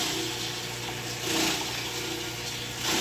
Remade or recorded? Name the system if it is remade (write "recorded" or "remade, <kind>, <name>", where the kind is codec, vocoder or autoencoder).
recorded